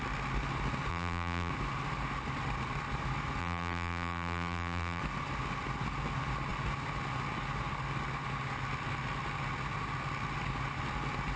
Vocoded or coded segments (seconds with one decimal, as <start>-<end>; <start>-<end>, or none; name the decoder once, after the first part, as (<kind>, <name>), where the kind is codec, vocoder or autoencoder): 0.9-1.5 (vocoder, BigVGAN v2); 3.4-5.0